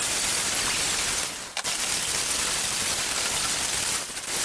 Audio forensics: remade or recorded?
recorded